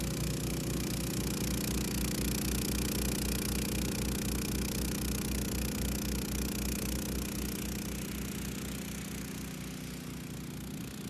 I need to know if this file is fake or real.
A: real